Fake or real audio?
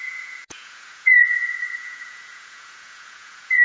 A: fake